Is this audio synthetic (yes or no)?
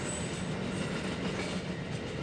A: no